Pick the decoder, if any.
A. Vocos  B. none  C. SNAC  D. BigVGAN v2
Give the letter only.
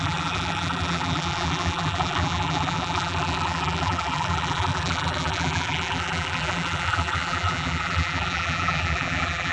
D